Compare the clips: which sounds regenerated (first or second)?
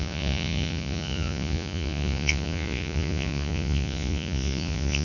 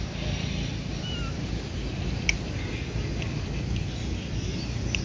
first